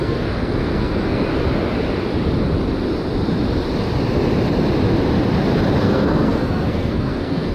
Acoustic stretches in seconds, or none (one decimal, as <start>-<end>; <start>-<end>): 1.3-5.8